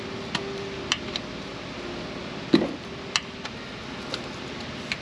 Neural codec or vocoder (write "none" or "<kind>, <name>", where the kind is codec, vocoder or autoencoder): none